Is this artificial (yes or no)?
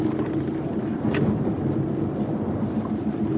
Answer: no